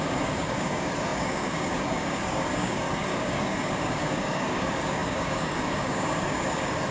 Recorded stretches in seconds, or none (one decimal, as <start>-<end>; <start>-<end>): none